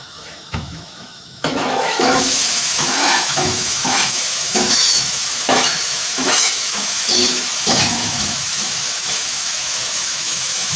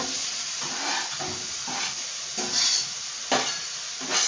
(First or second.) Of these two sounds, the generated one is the first